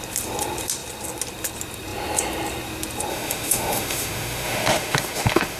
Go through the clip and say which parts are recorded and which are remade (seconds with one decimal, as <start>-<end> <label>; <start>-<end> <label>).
0.0-3.1 recorded; 3.1-5.6 remade